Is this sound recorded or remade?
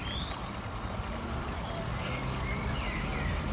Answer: remade